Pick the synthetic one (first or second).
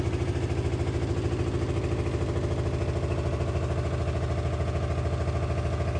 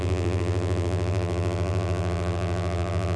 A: second